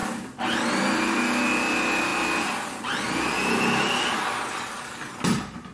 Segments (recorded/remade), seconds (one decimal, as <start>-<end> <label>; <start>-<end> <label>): 0.0-5.7 recorded